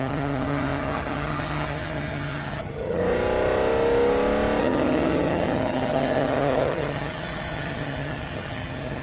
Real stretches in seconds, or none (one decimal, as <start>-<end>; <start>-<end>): 3.0-4.6